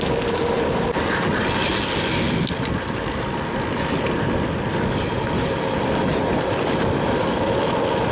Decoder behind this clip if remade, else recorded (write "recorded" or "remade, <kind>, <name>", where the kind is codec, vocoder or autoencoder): recorded